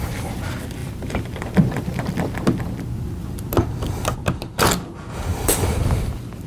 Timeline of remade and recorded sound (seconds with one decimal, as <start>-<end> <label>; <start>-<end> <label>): 0.0-0.8 recorded; 0.8-2.3 remade; 2.3-5.3 recorded; 5.3-6.5 remade